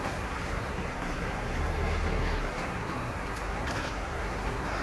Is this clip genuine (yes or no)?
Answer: no